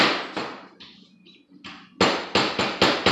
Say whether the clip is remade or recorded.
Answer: recorded